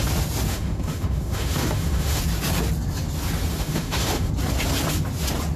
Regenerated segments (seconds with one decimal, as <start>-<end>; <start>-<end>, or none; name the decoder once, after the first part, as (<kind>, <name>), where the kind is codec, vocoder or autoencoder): 0.5-2.2 (autoencoder, DAC-VAE); 3.5-4.3